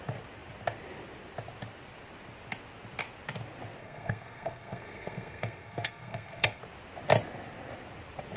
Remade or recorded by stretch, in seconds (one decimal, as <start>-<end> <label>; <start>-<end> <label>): 0.0-3.8 recorded; 3.8-6.6 remade; 6.6-8.4 recorded

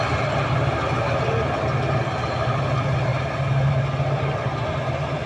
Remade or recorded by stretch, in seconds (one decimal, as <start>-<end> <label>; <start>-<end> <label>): 0.0-5.3 recorded

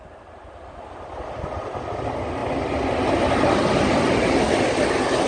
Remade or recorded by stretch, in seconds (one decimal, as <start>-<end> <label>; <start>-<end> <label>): 0.0-5.3 recorded

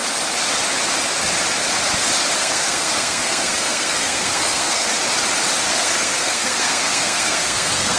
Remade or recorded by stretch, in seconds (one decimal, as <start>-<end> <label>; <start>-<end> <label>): 0.0-2.4 recorded; 2.4-4.9 remade; 4.9-5.7 recorded; 5.7-8.0 remade

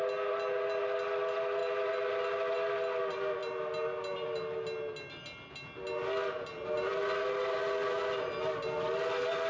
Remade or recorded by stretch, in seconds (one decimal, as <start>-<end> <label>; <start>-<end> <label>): 0.0-9.5 recorded

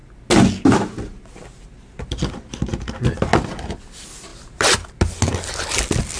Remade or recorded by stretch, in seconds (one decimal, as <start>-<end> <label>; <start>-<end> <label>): 0.0-4.3 recorded; 4.3-4.9 remade; 4.9-6.2 recorded

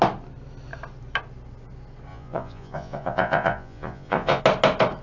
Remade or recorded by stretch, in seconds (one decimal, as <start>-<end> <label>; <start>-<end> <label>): 0.0-2.1 recorded; 2.1-4.4 remade; 4.4-5.0 recorded